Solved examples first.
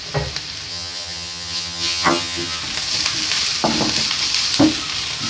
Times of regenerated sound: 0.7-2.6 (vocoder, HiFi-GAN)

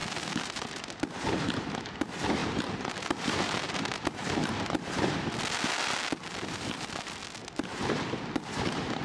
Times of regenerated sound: 2.4-5.0 (vocoder, BigVGAN v2); 7.4-8.0

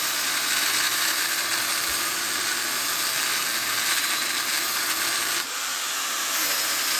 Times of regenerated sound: 1.7-5.9 (vocoder, BigVGAN v2)

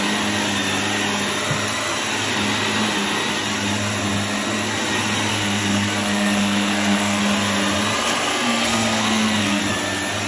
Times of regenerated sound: 5.3-7.2 (codec, SNAC); 8.3-9.6

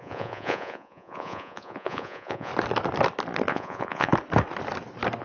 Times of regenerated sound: 0.0-2.5 (vocoder, Vocos); 3.5-4.1